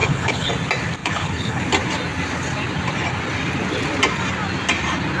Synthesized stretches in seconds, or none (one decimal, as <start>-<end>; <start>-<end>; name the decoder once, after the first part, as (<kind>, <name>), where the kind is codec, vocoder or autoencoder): 0.0-0.5 (codec, HILCodec); 1.0-1.6